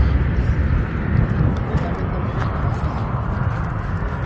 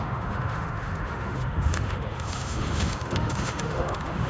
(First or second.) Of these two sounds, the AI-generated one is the second